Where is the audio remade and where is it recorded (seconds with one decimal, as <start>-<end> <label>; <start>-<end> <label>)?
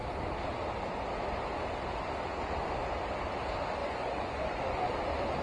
0.0-3.8 recorded; 3.8-4.8 remade; 4.8-5.4 recorded